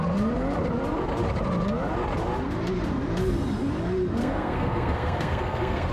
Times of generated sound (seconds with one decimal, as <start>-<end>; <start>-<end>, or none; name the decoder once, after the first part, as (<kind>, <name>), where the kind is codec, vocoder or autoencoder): 4.2-5.9 (codec, SNAC)